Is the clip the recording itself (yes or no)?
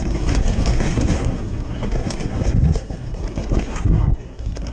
no